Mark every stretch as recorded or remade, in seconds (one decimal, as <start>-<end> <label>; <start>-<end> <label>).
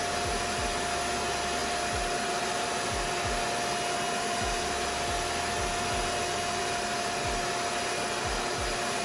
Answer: 0.0-9.0 recorded